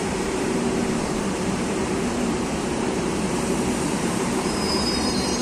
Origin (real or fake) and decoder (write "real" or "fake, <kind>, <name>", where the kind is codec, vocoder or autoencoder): fake, vocoder, BigVGAN v2